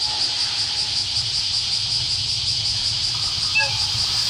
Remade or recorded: recorded